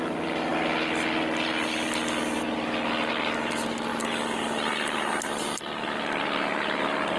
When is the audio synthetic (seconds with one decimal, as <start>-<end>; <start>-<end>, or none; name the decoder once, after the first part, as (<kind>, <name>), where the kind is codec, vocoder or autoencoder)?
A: none